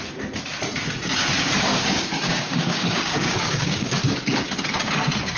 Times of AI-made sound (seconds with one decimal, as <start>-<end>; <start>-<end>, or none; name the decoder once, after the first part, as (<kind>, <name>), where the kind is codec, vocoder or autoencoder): 1.7-3.9 (codec, DAC)